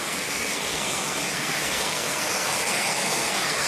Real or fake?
fake